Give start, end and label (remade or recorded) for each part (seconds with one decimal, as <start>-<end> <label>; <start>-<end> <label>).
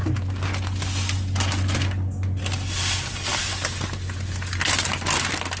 0.0-5.6 recorded